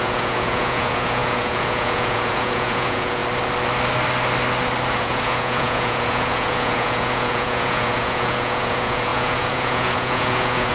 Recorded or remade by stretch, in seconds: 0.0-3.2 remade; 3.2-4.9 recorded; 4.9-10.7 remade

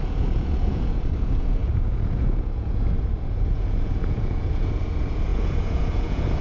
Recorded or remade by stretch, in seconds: 0.0-6.4 remade

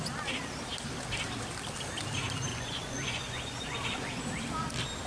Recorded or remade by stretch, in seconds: 0.0-2.5 recorded; 2.5-4.2 remade; 4.2-5.1 recorded